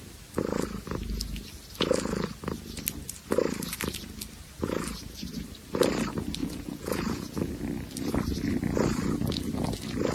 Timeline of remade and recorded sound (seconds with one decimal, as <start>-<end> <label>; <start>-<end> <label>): 0.0-6.4 recorded; 6.4-7.5 remade; 7.5-10.1 recorded